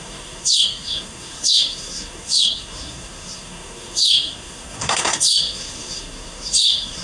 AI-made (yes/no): yes